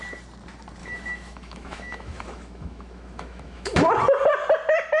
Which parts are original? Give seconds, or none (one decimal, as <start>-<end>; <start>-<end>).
0.0-0.8; 3.8-5.0